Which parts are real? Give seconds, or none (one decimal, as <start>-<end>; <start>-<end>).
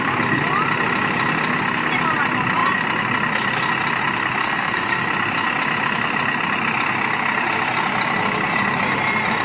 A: 0.0-4.4; 5.0-9.4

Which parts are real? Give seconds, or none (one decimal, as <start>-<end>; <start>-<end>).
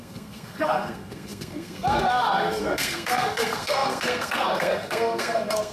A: none